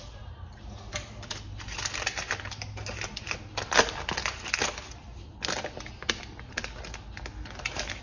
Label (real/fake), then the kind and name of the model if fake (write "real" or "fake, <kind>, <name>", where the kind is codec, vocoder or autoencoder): real